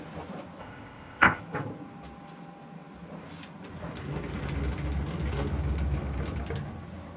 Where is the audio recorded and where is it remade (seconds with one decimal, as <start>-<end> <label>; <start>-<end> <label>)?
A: 0.0-0.6 recorded; 0.6-1.4 remade; 1.4-7.2 recorded